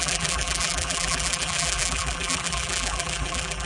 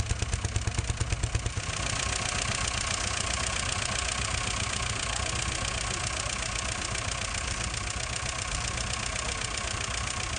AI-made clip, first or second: first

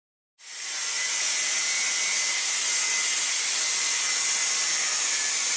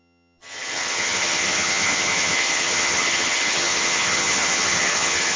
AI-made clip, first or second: second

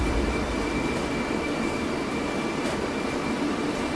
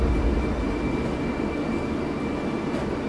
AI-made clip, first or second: first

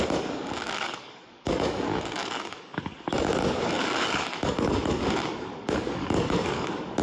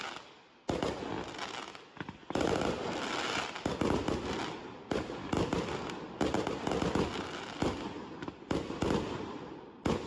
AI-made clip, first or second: first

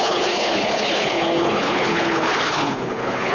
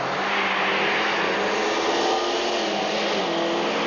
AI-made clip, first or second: first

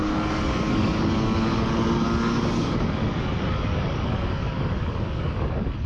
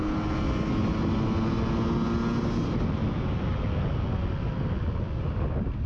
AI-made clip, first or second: first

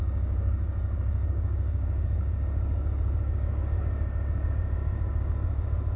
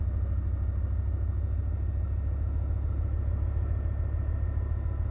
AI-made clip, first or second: first